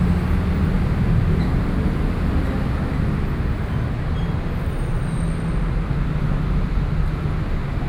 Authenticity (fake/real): real